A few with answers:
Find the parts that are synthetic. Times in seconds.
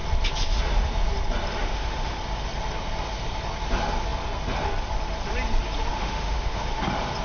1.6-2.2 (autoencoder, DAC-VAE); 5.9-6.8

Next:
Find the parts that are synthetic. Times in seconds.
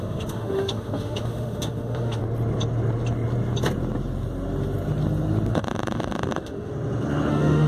0.0-2.2 (autoencoder, DAC-VAE); 5.5-6.7; 7.3-7.7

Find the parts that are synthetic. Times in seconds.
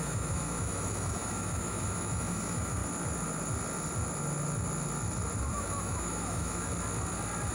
0.0-2.8 (autoencoder, DAC-VAE); 5.5-6.7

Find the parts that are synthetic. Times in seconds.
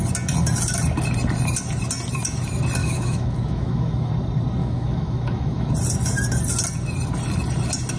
2.8-4.1 (autoencoder, DAC-VAE); 4.6-5.7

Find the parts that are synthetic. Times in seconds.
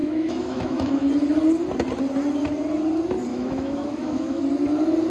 0.0-1.1 (autoencoder, DAC-VAE); 3.3-4.4